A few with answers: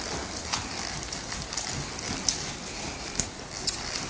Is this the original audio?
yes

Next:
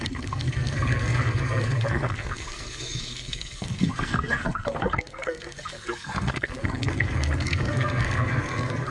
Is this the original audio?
no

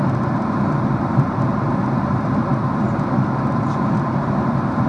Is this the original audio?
yes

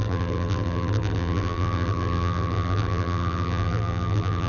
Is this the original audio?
no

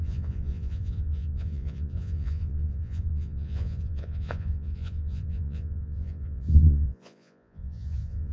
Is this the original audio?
no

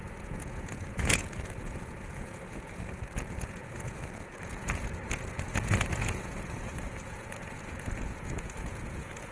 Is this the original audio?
no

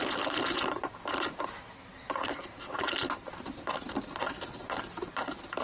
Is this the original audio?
yes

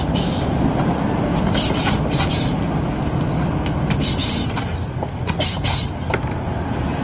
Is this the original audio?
yes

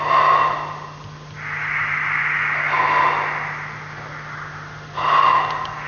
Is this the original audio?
yes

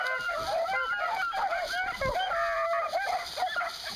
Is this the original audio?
yes